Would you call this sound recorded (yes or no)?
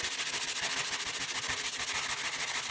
yes